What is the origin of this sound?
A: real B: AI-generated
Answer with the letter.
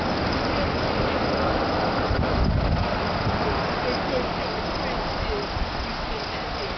A